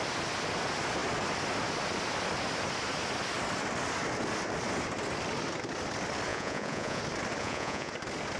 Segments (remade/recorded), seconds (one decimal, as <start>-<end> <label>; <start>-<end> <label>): 0.0-6.3 recorded; 6.3-7.0 remade; 7.0-7.4 recorded; 7.4-7.9 remade; 7.9-8.4 recorded